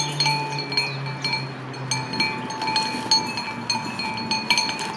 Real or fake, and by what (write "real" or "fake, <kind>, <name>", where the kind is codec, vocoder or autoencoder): real